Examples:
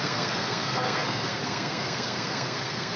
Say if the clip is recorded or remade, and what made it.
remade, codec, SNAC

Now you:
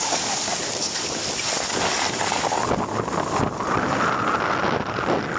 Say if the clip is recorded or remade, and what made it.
recorded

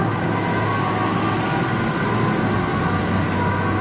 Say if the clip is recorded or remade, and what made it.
recorded